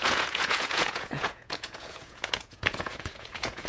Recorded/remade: remade